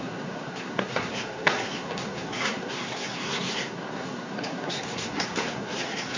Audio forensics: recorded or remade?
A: remade